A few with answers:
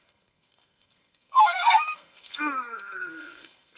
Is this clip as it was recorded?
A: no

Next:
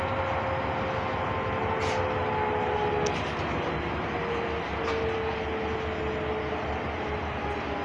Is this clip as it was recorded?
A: yes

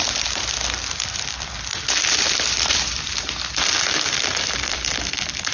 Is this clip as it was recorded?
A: no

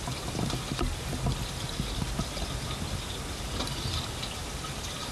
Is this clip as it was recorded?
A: yes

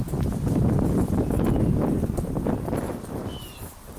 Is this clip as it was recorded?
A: yes